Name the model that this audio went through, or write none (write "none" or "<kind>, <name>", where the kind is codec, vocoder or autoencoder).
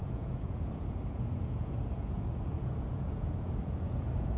vocoder, Vocos